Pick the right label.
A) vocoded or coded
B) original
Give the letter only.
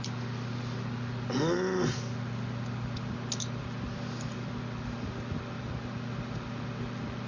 B